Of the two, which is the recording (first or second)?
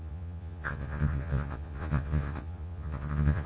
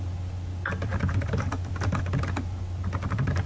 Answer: second